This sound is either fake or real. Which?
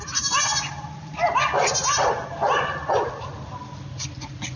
real